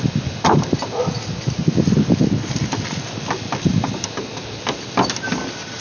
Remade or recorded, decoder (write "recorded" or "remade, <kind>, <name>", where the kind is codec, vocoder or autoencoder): recorded